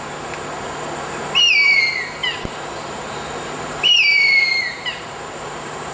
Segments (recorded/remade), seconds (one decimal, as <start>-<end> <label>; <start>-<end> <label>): 0.0-2.2 recorded; 2.2-5.9 remade